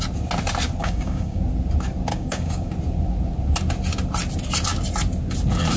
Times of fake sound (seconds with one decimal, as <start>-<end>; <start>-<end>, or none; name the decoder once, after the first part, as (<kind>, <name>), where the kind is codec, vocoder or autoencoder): 0.8-1.4 (codec, DAC); 2.1-2.7